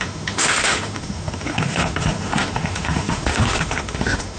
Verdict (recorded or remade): remade